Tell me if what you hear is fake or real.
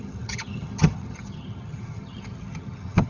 fake